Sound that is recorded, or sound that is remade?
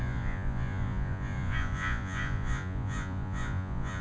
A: remade